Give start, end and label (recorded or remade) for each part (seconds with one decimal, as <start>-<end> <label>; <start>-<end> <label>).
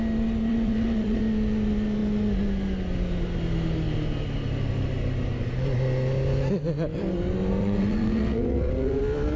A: 0.0-0.5 recorded; 0.5-1.2 remade; 1.2-7.6 recorded; 7.6-9.0 remade; 9.0-9.4 recorded